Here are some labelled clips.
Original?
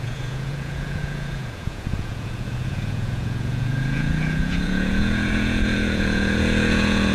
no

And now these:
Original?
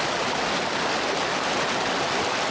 yes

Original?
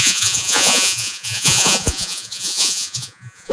no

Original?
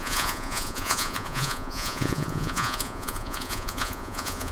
no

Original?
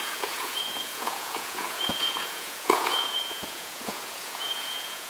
no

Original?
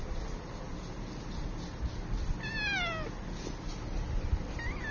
yes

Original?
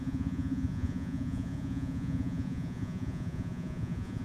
no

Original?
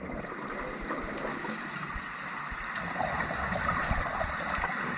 yes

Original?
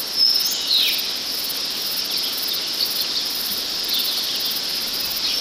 yes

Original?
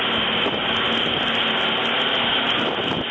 yes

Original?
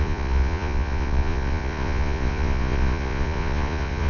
no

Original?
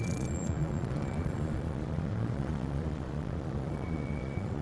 no